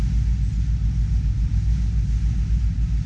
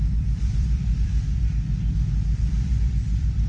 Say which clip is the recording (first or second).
first